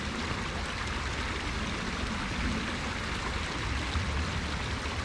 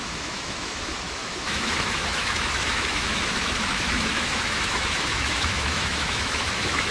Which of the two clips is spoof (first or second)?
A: second